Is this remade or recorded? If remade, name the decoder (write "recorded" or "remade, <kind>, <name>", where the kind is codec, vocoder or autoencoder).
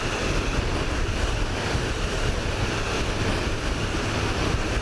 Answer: recorded